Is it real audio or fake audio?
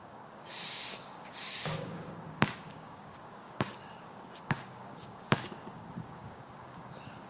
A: fake